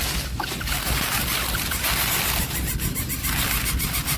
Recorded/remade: recorded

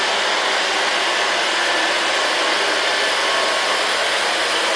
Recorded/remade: recorded